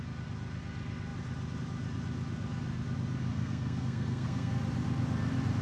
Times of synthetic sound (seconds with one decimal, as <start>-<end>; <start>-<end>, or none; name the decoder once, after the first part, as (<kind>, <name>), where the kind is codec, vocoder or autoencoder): 3.3-4.5 (codec, SNAC)